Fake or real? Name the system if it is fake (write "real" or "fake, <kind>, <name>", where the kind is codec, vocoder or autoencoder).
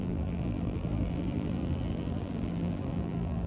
fake, vocoder, BigVGAN v2